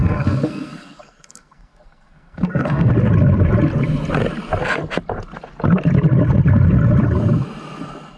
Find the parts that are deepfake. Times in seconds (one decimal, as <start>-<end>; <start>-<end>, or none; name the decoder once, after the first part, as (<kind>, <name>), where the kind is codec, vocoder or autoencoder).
0.0-2.9 (codec, SNAC)